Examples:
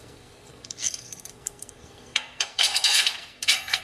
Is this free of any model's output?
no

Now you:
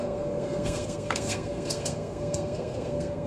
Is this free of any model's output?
no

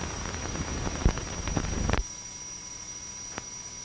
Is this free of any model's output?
no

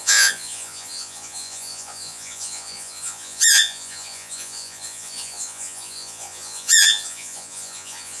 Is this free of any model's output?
no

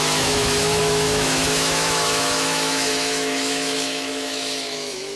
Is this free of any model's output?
no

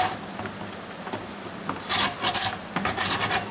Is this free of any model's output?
yes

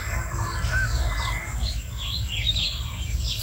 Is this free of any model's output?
no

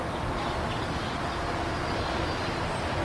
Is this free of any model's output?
yes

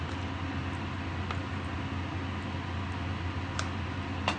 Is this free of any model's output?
yes